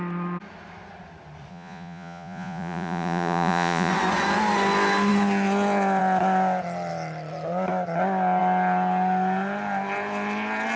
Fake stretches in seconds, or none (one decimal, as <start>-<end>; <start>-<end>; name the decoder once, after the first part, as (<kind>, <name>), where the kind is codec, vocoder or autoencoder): 1.5-3.9 (vocoder, Vocos)